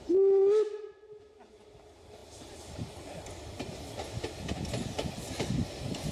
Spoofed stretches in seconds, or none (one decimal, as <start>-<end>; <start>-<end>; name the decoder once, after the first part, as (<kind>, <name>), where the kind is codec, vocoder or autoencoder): none